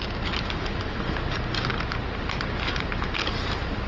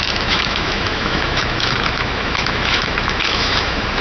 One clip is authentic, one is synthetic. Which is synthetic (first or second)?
second